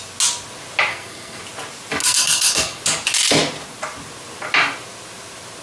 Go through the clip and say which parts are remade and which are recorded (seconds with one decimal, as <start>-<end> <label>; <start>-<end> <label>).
0.0-0.9 recorded; 0.9-1.4 remade; 1.4-2.0 recorded; 2.0-2.8 remade; 2.8-5.6 recorded